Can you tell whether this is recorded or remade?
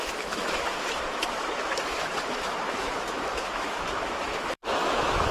remade